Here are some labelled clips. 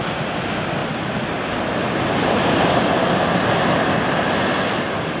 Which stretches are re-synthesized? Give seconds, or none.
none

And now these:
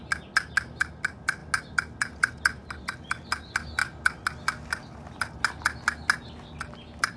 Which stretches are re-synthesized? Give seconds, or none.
none